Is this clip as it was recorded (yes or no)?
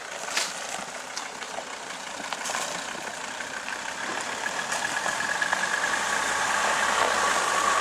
no